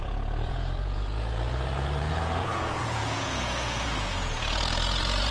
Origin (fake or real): fake